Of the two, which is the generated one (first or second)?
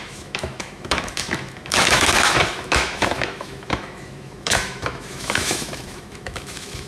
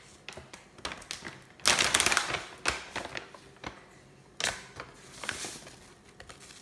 first